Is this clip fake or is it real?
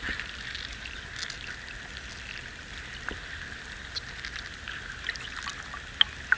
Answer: real